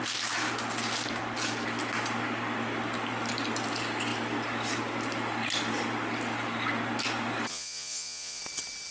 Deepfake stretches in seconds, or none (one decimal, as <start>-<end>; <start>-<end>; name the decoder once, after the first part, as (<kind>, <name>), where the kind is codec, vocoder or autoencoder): 7.5-8.4 (vocoder, Vocos)